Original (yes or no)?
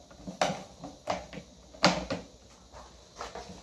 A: yes